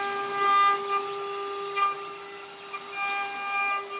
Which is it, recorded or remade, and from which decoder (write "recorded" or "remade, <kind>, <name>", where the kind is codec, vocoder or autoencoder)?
recorded